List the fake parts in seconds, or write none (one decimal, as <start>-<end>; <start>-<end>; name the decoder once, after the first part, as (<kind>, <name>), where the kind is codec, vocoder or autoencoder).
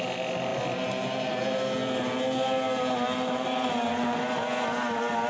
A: none